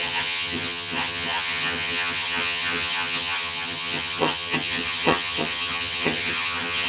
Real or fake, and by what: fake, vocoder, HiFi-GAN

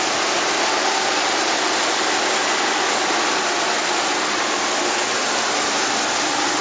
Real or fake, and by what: real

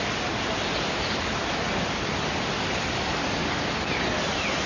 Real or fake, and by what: real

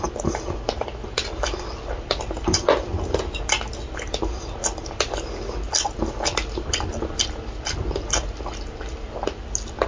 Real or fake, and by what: real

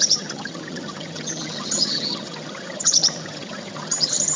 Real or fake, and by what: fake, vocoder, HiFi-GAN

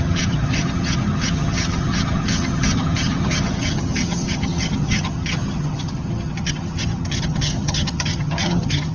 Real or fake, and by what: fake, vocoder, HiFi-GAN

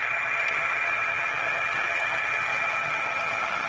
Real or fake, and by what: fake, vocoder, HiFi-GAN